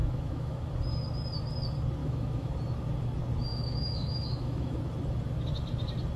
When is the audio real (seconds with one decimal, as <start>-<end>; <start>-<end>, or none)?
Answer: 0.7-2.0; 2.5-3.5; 4.8-6.2